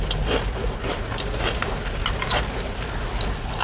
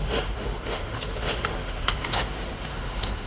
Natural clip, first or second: first